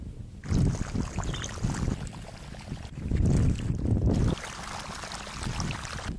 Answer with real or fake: real